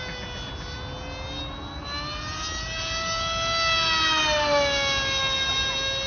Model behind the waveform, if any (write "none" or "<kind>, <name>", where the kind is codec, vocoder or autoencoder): none